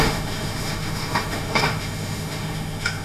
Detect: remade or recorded remade